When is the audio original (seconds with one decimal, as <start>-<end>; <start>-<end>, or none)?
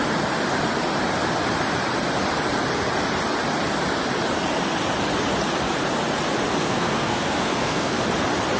0.0-6.6; 8.0-8.6